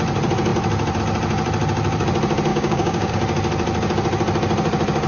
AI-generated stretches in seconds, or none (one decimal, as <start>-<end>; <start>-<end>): 2.5-3.1